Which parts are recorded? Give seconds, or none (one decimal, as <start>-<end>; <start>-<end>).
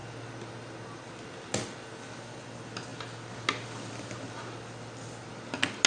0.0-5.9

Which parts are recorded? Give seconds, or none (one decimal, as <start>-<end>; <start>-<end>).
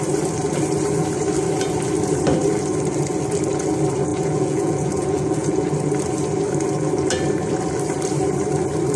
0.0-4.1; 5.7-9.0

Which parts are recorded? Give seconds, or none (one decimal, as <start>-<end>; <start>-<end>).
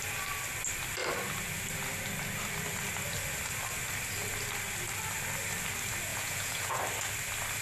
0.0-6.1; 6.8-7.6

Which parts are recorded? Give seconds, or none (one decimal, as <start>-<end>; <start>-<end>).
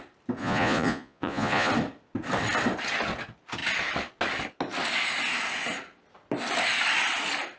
0.0-0.4; 1.7-7.6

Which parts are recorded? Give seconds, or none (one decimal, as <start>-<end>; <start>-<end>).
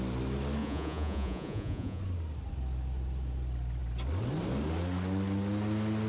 0.0-0.6; 2.0-6.1